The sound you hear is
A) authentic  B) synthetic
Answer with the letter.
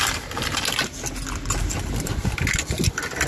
A